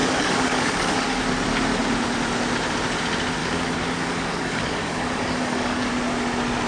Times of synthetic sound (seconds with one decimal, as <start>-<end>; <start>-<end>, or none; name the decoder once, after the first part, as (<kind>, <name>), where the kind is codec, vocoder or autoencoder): 0.0-1.2 (codec, DAC); 3.4-5.9